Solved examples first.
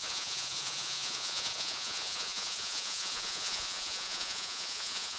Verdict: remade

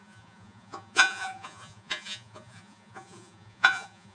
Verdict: remade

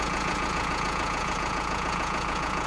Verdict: remade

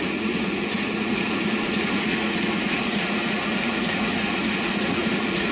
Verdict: remade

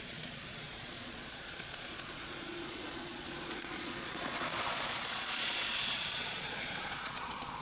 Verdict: remade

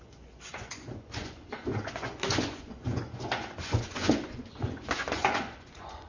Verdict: remade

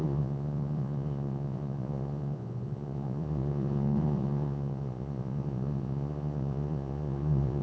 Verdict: remade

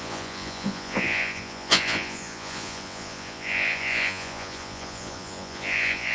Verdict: remade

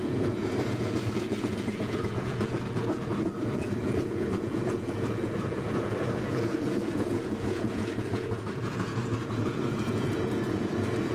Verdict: remade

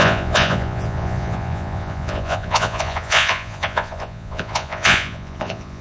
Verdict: remade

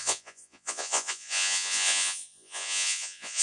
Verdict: remade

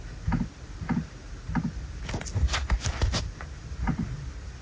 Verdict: recorded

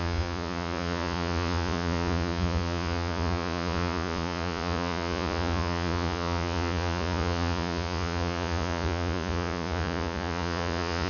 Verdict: remade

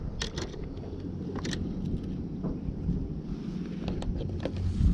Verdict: recorded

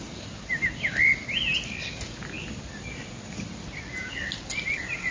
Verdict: recorded